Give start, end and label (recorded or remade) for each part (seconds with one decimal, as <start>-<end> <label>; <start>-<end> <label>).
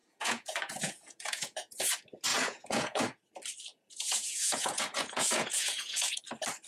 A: 0.0-1.9 remade; 1.9-2.3 recorded; 2.3-3.0 remade; 3.0-3.7 recorded; 3.7-6.2 remade; 6.2-6.7 recorded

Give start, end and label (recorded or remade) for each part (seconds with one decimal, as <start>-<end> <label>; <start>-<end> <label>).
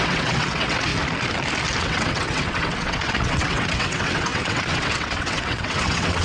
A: 0.0-0.9 remade; 0.9-1.8 recorded; 1.8-6.2 remade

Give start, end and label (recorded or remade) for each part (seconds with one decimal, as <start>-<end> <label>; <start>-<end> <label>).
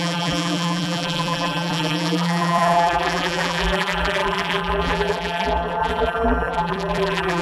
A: 0.0-7.4 remade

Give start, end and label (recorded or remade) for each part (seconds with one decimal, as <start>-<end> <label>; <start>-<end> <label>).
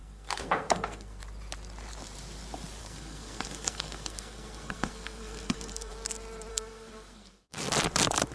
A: 0.0-1.2 remade; 1.2-2.8 recorded; 2.8-5.9 remade; 5.9-6.5 recorded; 6.5-7.7 remade; 7.7-8.3 recorded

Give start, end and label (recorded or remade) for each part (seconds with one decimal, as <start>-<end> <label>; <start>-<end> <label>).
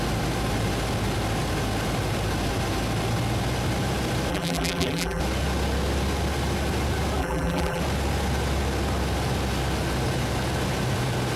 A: 0.0-4.3 recorded; 4.3-5.2 remade; 5.2-7.2 recorded; 7.2-7.8 remade; 7.8-11.4 recorded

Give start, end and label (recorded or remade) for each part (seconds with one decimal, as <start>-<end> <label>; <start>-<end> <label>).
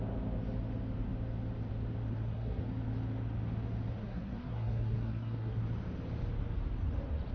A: 0.0-2.1 recorded; 2.1-2.6 remade; 2.6-4.0 recorded; 4.0-5.6 remade; 5.6-7.3 recorded